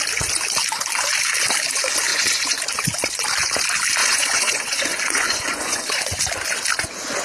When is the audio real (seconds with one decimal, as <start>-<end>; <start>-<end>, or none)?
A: 0.0-2.1; 2.6-4.0; 6.2-7.2